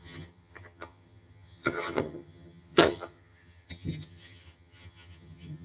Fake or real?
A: fake